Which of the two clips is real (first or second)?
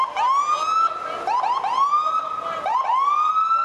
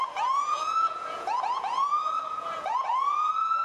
first